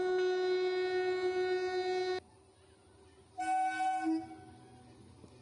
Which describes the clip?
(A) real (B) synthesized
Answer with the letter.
A